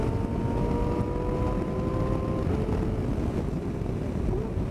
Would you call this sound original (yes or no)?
yes